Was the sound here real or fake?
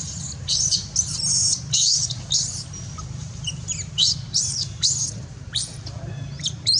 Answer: fake